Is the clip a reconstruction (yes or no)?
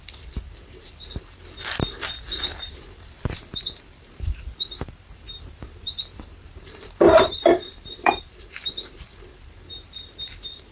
yes